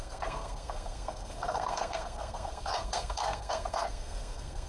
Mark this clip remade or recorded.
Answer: remade